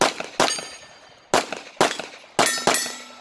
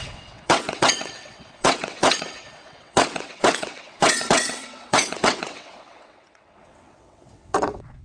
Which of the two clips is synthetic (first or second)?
second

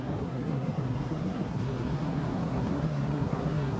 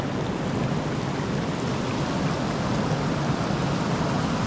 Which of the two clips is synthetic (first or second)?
first